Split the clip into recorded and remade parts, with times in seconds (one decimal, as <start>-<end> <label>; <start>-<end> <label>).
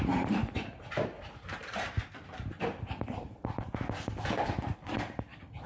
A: 0.0-5.7 recorded